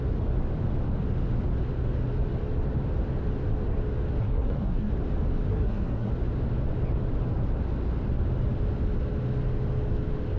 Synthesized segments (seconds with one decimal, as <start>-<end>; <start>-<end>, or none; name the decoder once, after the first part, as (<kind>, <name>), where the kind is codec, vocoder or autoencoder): 4.2-4.9 (codec, SNAC); 5.5-6.1